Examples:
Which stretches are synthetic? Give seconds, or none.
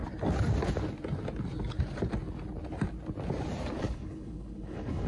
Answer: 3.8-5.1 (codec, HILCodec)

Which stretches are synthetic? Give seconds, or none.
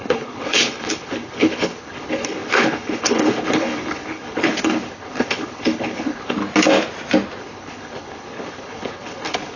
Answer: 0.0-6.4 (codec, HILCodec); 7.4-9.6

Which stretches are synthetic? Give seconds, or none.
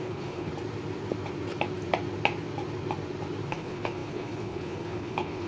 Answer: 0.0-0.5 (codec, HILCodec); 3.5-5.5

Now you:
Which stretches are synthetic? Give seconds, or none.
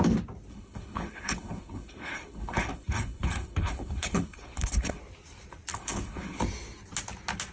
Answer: 0.5-5.0 (codec, HILCodec); 5.7-6.4